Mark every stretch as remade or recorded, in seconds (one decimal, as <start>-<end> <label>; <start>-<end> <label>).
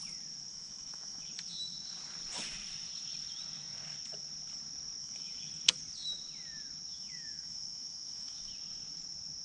0.0-0.5 recorded; 0.5-1.3 remade; 1.3-5.0 recorded; 5.0-5.5 remade; 5.5-6.9 recorded; 6.9-8.5 remade; 8.5-9.4 recorded